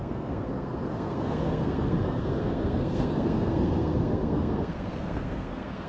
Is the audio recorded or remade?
remade